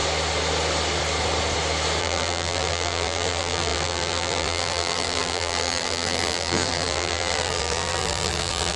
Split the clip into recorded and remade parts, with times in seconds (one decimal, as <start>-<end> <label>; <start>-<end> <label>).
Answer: 0.0-2.0 recorded; 2.0-8.8 remade

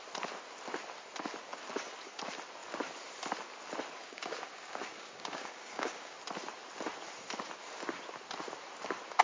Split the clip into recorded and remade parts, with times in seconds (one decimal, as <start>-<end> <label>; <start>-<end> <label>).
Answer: 0.0-4.0 recorded; 4.0-6.2 remade; 6.2-9.2 recorded

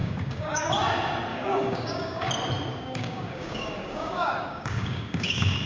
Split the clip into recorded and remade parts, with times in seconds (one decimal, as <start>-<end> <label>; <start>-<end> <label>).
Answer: 0.0-0.7 remade; 0.7-1.3 recorded; 1.3-2.3 remade; 2.3-2.7 recorded; 2.7-5.7 remade

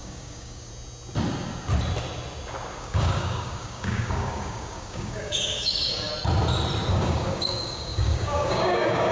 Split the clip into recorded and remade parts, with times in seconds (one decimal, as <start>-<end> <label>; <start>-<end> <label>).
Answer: 0.0-0.7 remade; 0.7-2.8 recorded; 2.8-6.1 remade; 6.1-6.9 recorded; 6.9-9.1 remade